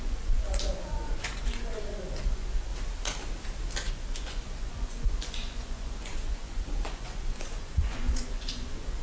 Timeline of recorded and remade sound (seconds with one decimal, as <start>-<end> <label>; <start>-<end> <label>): 0.0-2.7 remade; 2.7-3.9 recorded; 3.9-9.0 remade